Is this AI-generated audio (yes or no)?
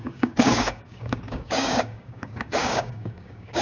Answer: yes